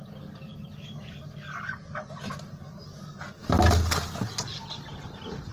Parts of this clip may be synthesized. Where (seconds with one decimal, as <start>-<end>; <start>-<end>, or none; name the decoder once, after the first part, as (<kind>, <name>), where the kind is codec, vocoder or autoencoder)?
none